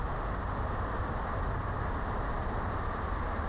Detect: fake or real real